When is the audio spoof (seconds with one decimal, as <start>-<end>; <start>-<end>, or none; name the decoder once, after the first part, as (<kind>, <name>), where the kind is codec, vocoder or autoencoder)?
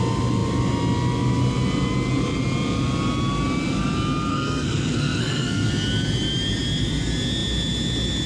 4.3-5.7 (codec, SNAC)